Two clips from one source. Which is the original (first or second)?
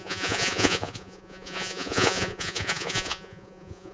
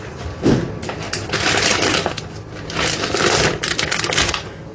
second